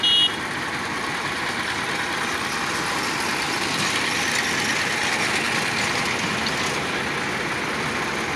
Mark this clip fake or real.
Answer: real